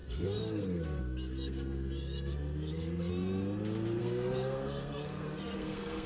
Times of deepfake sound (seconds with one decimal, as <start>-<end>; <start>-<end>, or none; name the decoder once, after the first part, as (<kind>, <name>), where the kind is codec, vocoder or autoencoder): 0.0-3.1 (codec, SNAC); 4.0-6.1